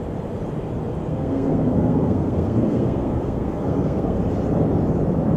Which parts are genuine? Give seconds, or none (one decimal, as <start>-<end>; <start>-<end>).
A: 0.0-1.1; 4.2-5.4